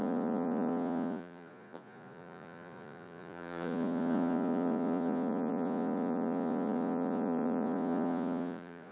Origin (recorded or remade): remade